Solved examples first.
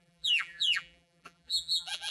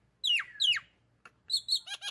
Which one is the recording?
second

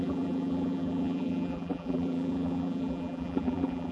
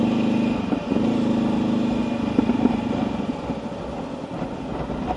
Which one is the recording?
second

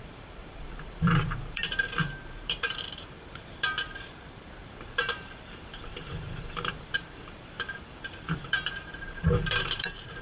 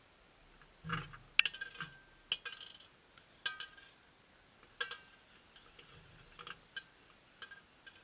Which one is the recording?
second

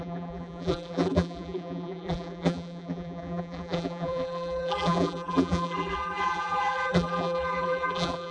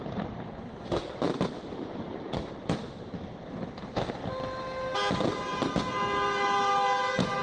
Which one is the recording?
second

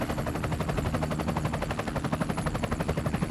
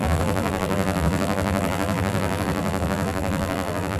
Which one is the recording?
first